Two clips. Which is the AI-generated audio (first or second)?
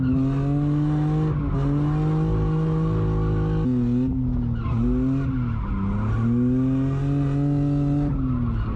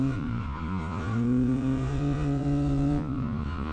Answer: second